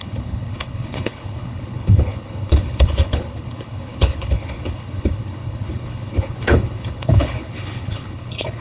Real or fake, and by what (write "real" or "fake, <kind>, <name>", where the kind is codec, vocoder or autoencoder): fake, codec, HILCodec